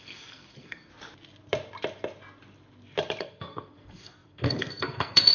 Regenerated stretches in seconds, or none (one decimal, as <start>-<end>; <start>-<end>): 0.0-0.9; 3.2-5.3